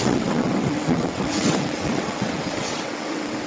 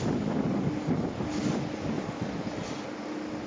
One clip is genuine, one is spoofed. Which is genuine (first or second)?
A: second